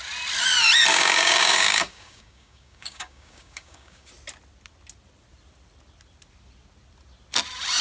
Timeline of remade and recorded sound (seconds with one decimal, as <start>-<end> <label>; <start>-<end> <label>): 0.0-0.9 recorded; 0.9-4.1 remade; 4.1-7.8 recorded